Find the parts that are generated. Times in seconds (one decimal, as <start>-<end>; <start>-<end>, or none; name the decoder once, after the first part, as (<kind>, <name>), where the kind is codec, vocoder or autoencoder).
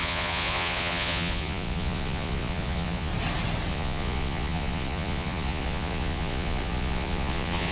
0.0-3.1 (vocoder, Vocos); 3.7-7.7